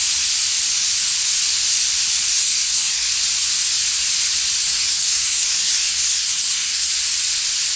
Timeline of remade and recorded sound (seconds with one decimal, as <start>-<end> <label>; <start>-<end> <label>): 0.0-2.3 recorded; 2.3-3.1 remade; 3.1-4.6 recorded; 4.6-6.9 remade; 6.9-7.8 recorded